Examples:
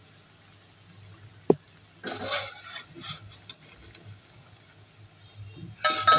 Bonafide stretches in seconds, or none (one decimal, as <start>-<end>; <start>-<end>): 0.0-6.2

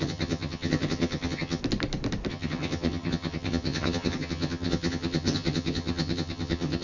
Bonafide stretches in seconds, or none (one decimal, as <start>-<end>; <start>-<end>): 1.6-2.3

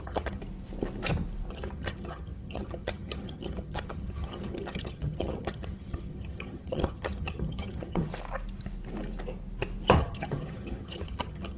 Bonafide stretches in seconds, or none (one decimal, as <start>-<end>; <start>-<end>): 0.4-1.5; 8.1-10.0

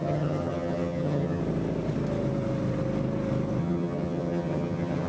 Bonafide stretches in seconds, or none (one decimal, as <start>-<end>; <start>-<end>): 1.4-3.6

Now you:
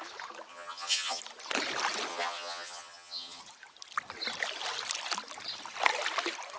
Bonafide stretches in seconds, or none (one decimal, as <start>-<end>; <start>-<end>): 0.0-0.5; 1.2-2.1; 3.4-6.6

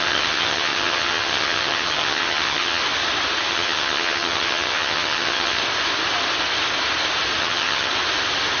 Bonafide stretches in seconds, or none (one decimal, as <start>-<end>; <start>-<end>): 2.8-3.5; 5.6-7.4; 7.9-8.6

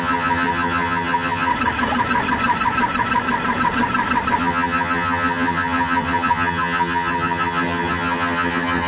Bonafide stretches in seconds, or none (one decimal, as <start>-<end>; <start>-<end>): 1.5-4.4